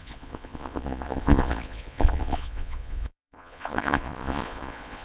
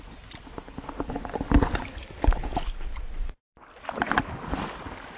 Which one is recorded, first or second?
second